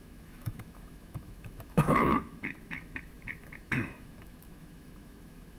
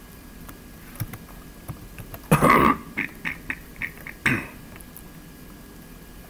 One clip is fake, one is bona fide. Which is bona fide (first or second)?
second